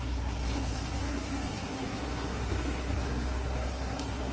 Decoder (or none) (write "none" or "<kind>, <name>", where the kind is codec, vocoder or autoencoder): codec, SNAC